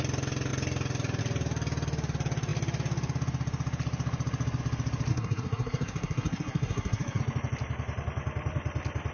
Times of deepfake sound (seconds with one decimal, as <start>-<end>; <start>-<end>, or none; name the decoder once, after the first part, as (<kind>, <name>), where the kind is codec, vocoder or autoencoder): 5.1-7.2 (codec, SNAC)